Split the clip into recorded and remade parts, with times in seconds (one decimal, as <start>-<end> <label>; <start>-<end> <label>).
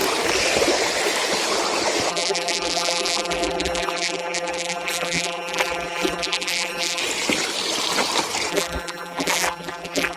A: 0.0-2.1 recorded; 2.1-7.0 remade; 7.0-8.5 recorded; 8.5-10.2 remade